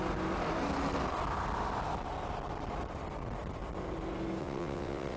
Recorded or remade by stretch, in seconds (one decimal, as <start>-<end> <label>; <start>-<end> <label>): 0.0-4.4 recorded; 4.4-5.2 remade